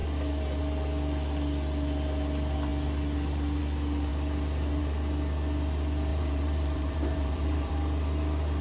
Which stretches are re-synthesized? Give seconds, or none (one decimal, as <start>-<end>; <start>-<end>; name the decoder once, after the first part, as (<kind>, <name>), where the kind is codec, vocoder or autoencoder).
6.1-7.7 (vocoder, BigVGAN v2)